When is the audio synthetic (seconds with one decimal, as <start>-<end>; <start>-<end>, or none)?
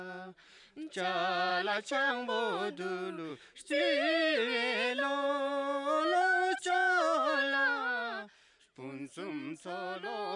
1.5-2.1; 3.3-3.8